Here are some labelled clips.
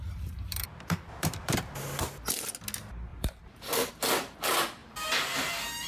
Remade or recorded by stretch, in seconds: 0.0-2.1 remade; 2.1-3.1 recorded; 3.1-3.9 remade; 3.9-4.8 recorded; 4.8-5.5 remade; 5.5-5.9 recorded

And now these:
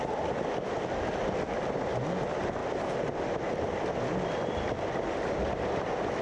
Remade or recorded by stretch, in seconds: 0.0-6.2 recorded

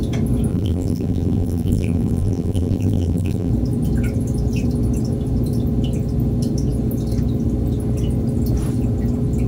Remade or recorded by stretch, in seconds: 0.0-0.5 recorded; 0.5-3.5 remade; 3.5-9.5 recorded

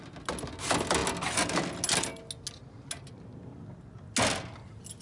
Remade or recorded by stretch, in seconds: 0.0-5.0 recorded

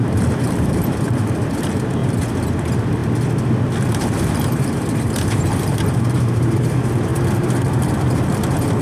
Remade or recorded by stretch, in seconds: 0.0-2.0 remade; 2.0-2.5 recorded; 2.5-3.0 remade; 3.0-3.8 recorded; 3.8-8.8 remade

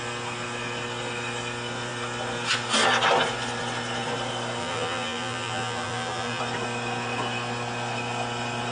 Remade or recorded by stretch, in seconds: 0.0-4.6 recorded; 4.6-6.4 remade; 6.4-8.7 recorded